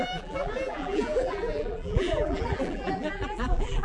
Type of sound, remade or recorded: remade